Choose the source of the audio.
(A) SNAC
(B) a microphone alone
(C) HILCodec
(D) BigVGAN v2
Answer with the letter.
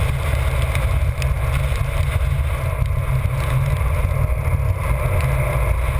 B